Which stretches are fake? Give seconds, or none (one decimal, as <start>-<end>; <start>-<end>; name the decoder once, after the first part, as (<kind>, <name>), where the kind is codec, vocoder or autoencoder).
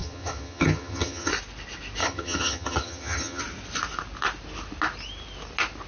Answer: 0.0-1.3 (vocoder, HiFi-GAN); 2.0-3.4